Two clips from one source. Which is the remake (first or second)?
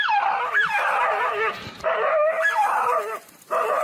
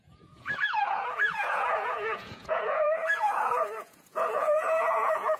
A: second